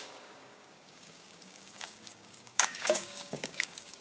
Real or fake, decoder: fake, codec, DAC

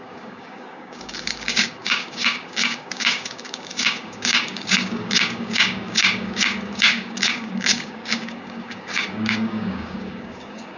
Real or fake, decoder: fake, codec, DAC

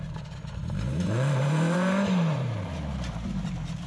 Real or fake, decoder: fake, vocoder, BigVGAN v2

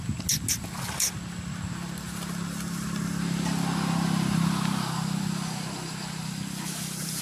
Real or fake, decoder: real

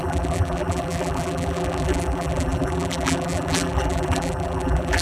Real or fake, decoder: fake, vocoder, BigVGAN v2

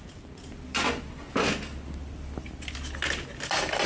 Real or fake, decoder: real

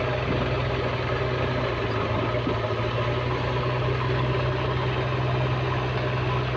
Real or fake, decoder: real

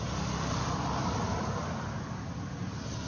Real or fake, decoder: real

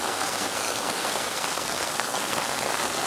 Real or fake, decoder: fake, codec, SNAC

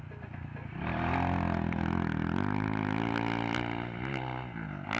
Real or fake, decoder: real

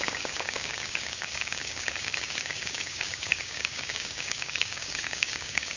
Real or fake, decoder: fake, codec, DAC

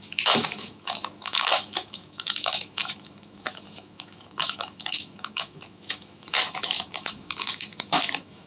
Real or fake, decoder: fake, autoencoder, DAC-VAE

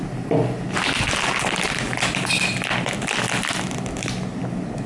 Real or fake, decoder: real